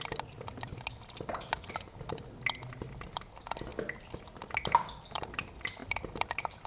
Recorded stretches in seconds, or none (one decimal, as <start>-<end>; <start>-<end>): 0.0-5.8